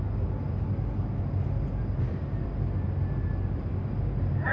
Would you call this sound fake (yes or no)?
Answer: no